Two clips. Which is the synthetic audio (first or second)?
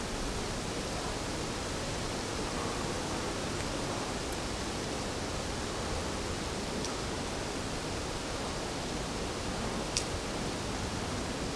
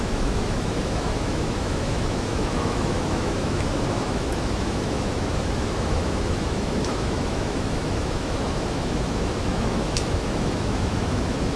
second